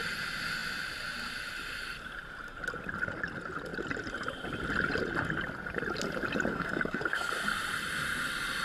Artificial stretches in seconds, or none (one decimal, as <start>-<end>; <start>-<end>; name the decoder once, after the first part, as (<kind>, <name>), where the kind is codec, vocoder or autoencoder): 6.5-7.3 (codec, SNAC)